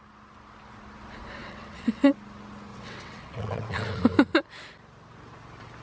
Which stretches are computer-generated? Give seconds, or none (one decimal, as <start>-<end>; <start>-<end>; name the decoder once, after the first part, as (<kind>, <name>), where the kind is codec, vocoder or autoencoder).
1.4-2.1 (vocoder, WaveNeXt); 2.7-4.0